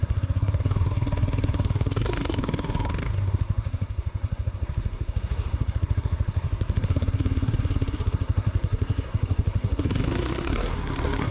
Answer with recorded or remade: remade